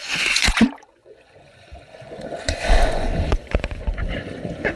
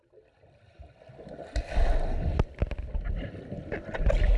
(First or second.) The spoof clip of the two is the first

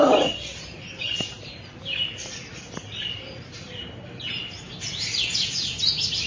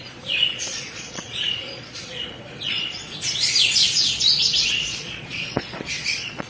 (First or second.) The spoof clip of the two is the second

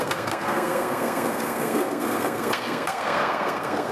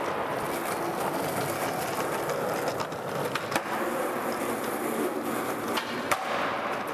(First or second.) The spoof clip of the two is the first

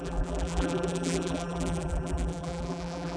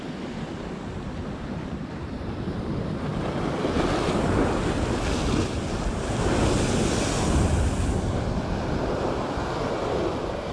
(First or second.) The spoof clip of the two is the first